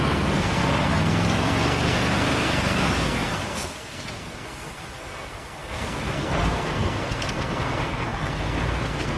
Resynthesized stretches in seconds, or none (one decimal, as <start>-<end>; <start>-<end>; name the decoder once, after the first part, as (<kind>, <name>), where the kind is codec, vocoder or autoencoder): 0.0-9.2 (codec, SNAC)